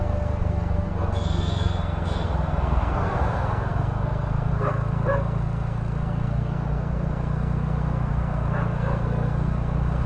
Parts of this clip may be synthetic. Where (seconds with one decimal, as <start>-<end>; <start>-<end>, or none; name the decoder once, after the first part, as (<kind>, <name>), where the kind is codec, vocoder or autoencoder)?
0.0-10.1 (codec, SNAC)